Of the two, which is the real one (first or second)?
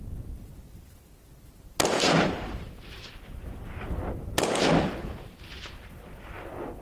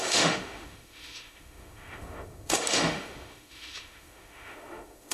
first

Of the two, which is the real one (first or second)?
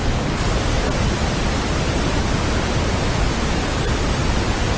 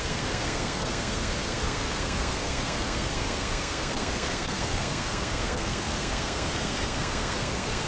first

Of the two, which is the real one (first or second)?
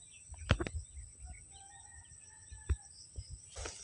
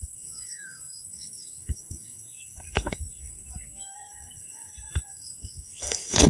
first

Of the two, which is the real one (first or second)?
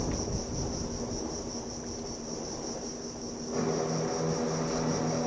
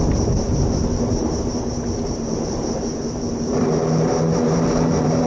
first